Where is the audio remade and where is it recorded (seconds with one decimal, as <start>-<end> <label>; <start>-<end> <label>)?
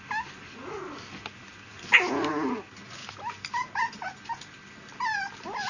0.0-5.7 recorded